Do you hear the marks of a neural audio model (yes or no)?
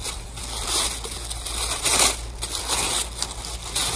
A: no